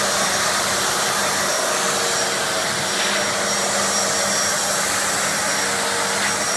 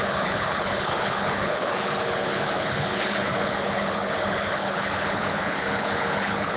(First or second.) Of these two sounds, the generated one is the second